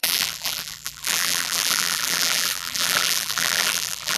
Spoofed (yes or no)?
yes